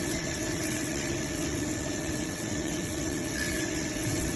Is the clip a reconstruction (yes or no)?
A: yes